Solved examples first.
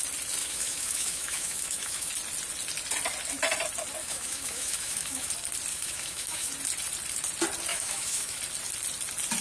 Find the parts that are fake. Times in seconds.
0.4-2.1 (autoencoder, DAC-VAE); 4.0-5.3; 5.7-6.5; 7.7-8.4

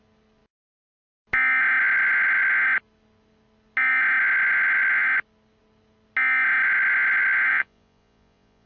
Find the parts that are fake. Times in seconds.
7.5-8.7 (vocoder, Vocos)

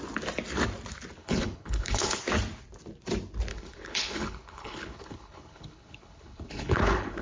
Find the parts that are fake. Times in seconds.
1.2-2.2 (codec, HILCodec); 3.5-7.2

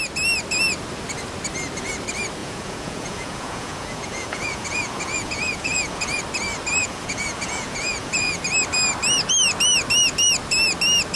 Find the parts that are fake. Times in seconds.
2.4-6.2 (vocoder, Vocos); 6.8-8.4

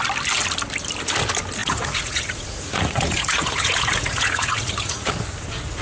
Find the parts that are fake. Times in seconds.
1.6-5.1 (vocoder, Vocos)